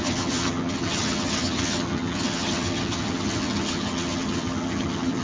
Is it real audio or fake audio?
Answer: fake